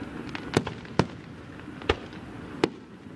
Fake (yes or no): no